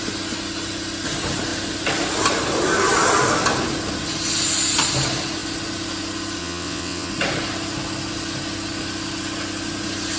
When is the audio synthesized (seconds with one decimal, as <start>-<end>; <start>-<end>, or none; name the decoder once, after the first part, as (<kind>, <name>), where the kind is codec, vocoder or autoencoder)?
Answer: 6.4-7.1 (vocoder, WaveNeXt)